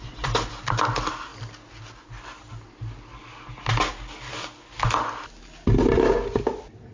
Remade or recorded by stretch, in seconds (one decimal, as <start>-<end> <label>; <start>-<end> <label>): 0.0-6.9 recorded